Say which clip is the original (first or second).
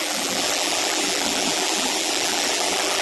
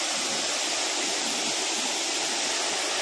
second